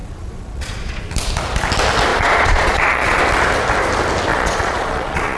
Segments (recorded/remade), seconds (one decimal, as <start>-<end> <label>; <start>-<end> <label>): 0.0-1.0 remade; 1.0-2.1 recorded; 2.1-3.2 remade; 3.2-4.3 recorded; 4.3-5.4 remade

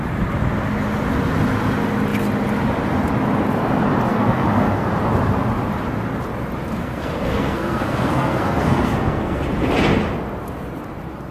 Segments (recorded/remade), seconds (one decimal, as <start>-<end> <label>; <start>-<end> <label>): 0.0-4.1 recorded; 4.1-4.9 remade; 4.9-6.8 recorded; 6.8-9.4 remade; 9.4-11.3 recorded

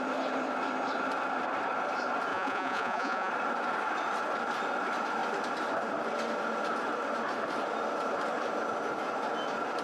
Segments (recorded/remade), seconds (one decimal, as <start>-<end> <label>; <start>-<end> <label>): 0.0-2.3 recorded; 2.3-3.3 remade; 3.3-9.8 recorded

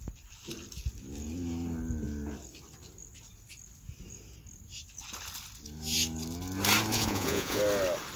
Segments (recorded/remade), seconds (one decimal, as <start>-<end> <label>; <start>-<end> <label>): 0.0-6.9 recorded; 6.9-7.6 remade; 7.6-8.2 recorded

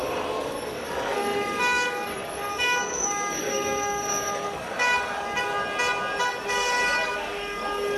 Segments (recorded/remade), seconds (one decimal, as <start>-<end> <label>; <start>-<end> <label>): 0.0-5.5 remade; 5.5-6.2 recorded; 6.2-8.0 remade

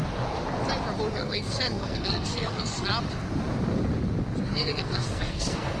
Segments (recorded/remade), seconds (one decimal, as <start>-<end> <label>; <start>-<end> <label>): 0.0-1.1 recorded; 1.1-2.9 remade; 2.9-4.4 recorded; 4.4-5.8 remade